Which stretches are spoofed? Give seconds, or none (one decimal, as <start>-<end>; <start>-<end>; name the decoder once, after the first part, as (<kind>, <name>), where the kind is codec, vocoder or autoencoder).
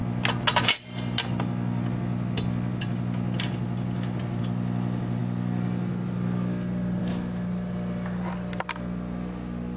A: none